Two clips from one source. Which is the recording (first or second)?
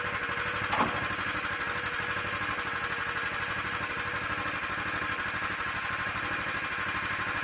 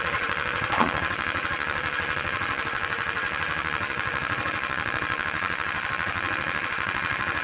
first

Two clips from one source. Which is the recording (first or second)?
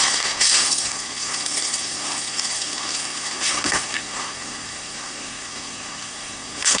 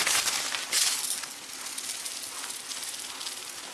second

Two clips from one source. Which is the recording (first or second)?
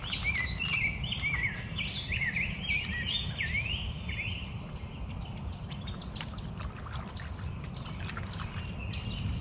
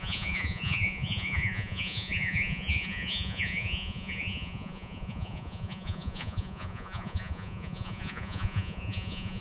first